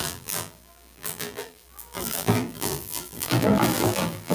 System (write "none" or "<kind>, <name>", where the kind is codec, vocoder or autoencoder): vocoder, BigVGAN v2